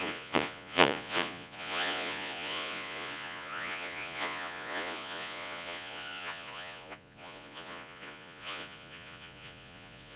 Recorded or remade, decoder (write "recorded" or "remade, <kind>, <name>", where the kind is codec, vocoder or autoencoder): remade, vocoder, Vocos